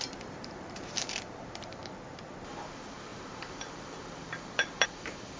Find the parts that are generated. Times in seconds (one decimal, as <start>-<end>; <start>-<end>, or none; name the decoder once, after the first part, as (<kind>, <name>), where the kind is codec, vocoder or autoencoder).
0.0-1.8 (vocoder, BigVGAN v2); 2.6-5.4